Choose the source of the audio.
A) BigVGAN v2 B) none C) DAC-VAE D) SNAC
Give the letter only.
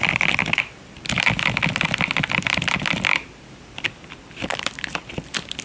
A